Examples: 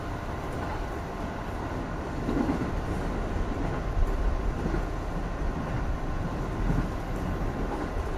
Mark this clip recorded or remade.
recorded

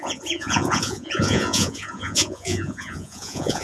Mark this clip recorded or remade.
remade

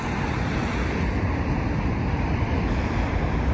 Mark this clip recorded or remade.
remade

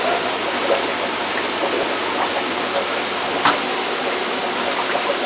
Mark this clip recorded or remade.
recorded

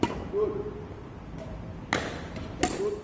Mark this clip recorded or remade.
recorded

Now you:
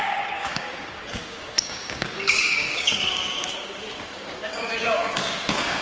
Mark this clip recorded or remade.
remade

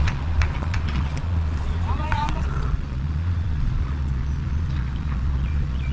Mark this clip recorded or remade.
remade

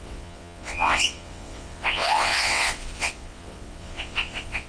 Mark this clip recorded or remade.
remade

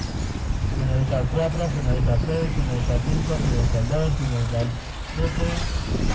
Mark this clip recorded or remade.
recorded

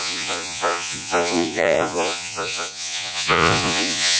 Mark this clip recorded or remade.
remade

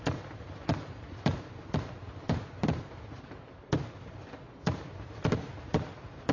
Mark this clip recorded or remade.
remade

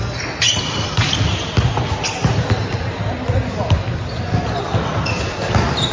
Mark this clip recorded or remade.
recorded